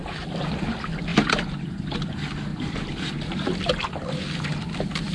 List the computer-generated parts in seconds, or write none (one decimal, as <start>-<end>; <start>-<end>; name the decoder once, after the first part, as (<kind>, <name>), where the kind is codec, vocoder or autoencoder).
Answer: 1.1-2.1 (vocoder, BigVGAN v2); 2.5-3.0